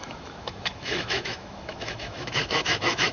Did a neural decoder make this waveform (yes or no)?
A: yes